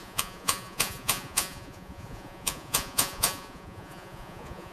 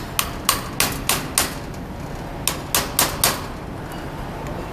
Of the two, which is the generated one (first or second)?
first